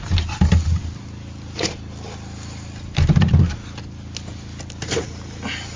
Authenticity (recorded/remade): recorded